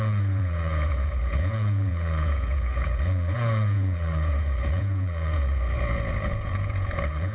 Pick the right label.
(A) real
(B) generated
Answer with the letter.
B